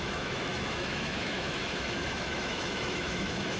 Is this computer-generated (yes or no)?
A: yes